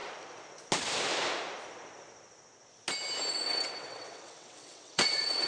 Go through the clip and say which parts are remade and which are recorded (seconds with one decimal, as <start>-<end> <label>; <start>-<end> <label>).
0.0-3.3 recorded; 3.3-5.5 remade